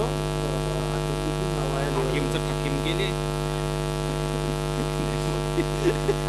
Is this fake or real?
real